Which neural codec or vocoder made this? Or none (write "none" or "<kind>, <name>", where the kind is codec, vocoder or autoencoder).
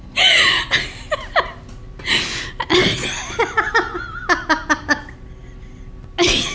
none